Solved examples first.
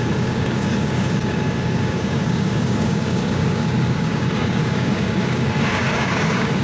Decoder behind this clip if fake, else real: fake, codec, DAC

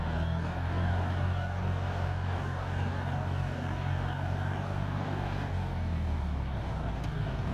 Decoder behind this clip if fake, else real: fake, codec, DAC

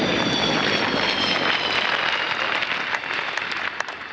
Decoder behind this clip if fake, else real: real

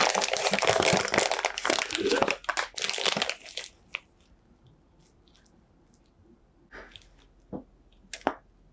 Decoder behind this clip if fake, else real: real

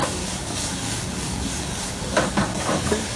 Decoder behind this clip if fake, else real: fake, codec, DAC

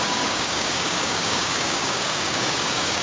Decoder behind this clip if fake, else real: fake, codec, DAC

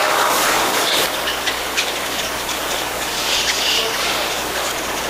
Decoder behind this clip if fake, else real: fake, codec, DAC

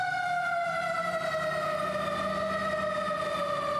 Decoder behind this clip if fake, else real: real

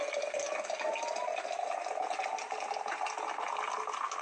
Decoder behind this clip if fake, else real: real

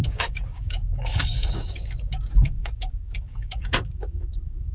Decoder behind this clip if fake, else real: fake, codec, DAC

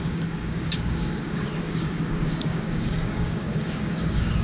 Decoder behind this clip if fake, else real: fake, codec, DAC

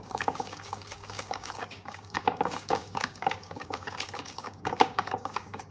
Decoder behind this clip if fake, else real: fake, codec, DAC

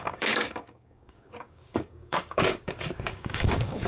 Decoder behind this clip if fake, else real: fake, codec, DAC